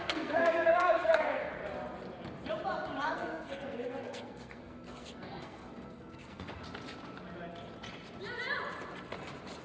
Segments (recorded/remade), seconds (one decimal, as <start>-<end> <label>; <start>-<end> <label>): 0.0-1.6 remade; 1.6-3.0 recorded; 3.0-6.6 remade; 6.6-9.6 recorded